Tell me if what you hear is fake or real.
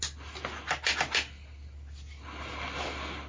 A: real